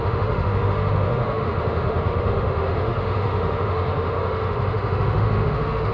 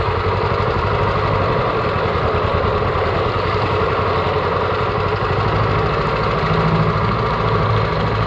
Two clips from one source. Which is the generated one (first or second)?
first